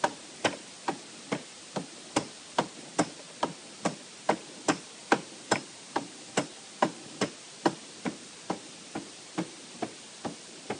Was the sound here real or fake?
real